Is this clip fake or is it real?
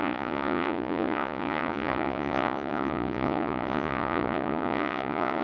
fake